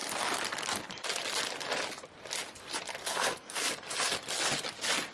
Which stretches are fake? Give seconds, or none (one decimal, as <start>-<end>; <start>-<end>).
3.0-3.7